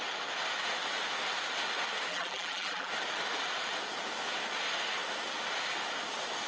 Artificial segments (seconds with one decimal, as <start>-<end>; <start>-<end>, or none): 2.1-2.9